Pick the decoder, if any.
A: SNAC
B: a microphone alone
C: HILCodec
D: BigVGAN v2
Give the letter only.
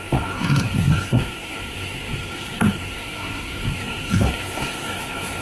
A